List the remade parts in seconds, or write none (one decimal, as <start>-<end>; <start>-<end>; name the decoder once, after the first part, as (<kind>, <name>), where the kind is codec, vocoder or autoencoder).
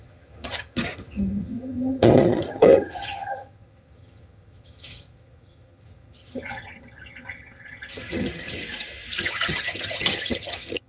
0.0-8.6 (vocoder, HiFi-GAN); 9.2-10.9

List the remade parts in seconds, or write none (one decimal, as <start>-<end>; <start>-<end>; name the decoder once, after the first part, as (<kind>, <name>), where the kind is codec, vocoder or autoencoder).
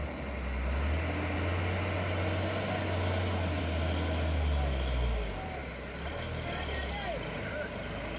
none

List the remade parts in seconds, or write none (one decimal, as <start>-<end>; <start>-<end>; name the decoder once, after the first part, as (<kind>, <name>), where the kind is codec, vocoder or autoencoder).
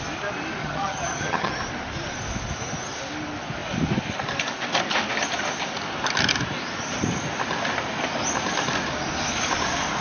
0.6-1.5 (vocoder, HiFi-GAN)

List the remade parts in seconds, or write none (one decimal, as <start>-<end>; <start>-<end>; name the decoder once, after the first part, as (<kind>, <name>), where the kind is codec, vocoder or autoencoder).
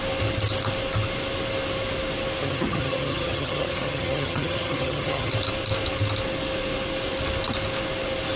2.4-5.3 (vocoder, HiFi-GAN)